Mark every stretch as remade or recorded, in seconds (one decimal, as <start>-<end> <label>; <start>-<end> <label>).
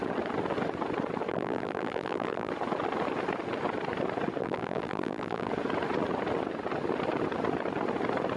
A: 0.0-1.3 recorded; 1.3-2.5 remade; 2.5-4.4 recorded; 4.4-5.5 remade; 5.5-8.4 recorded